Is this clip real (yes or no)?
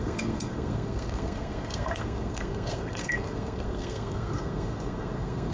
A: no